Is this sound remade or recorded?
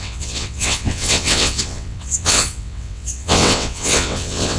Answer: remade